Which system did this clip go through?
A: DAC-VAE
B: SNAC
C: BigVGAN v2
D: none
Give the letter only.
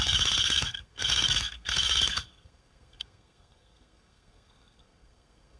B